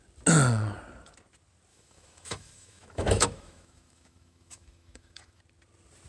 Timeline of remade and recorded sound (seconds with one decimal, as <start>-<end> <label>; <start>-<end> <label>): 0.0-1.7 recorded; 1.7-5.4 remade; 5.4-6.1 recorded